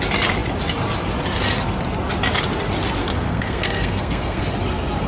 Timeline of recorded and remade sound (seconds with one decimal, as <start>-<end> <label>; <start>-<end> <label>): 0.0-3.0 recorded; 3.0-4.4 remade; 4.4-5.1 recorded